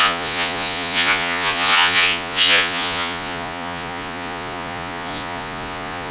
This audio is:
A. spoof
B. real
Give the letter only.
A